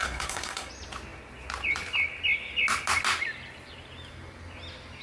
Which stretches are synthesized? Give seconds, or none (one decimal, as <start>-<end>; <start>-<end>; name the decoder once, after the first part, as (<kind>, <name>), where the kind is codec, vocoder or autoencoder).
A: 0.0-0.7 (codec, SNAC)